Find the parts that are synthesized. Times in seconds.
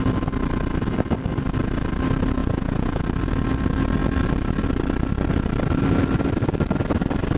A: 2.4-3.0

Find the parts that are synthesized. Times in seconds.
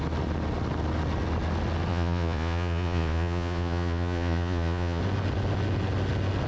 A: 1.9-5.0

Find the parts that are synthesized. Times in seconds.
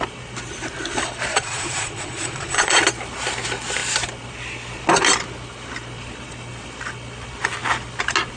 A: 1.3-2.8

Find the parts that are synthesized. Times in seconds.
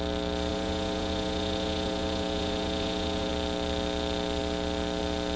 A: 0.5-3.3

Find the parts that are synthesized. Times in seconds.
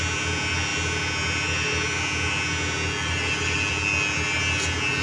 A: none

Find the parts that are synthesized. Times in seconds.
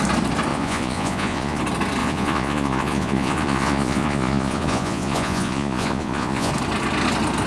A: 0.5-1.6; 2.0-6.5